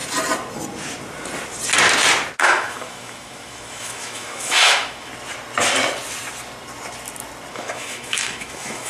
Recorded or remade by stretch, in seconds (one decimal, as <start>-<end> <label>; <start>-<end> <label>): 0.0-2.4 recorded; 2.4-5.1 remade; 5.1-7.5 recorded; 7.5-8.9 remade